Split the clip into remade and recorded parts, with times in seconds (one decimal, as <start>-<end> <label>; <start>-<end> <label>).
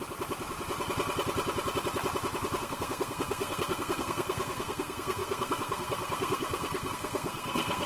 0.0-2.6 recorded; 2.6-7.9 remade